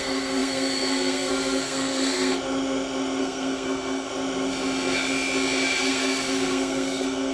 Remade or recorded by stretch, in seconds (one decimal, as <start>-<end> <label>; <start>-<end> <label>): 0.0-2.3 remade; 2.3-3.2 recorded; 3.2-4.1 remade; 4.1-5.8 recorded; 5.8-7.3 remade